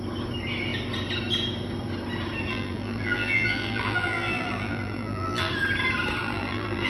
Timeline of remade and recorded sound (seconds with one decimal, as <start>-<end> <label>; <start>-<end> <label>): 0.0-2.5 recorded; 2.5-5.5 remade; 5.5-6.2 recorded; 6.2-6.9 remade